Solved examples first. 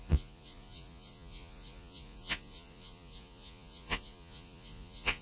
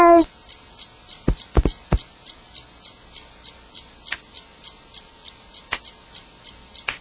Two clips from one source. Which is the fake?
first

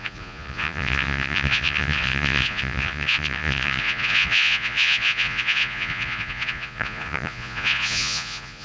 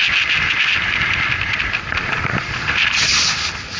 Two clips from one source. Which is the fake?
first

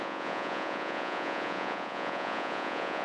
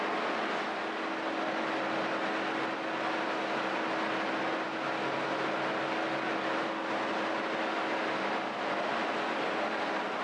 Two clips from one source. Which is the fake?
first